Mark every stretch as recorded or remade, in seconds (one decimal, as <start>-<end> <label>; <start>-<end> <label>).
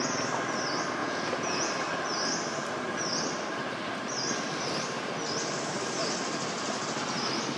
0.0-1.0 recorded; 1.0-1.7 remade; 1.7-7.6 recorded